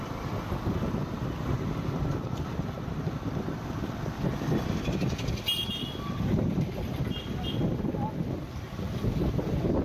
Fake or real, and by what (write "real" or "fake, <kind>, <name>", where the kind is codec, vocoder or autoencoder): real